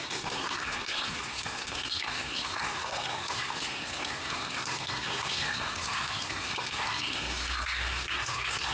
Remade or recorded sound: remade